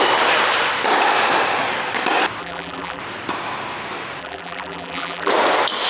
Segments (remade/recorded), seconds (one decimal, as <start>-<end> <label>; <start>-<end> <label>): 0.0-2.4 recorded; 2.4-3.0 remade; 3.0-4.2 recorded; 4.2-5.3 remade; 5.3-5.9 recorded